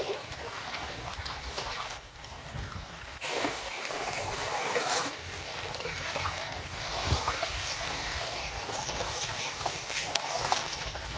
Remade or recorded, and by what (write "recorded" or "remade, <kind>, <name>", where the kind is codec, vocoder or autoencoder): remade, codec, DAC